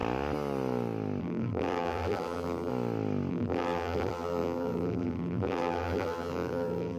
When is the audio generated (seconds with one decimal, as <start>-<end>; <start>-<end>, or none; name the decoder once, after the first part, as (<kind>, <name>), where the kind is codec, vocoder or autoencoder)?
1.2-2.7 (vocoder, BigVGAN v2); 3.3-7.0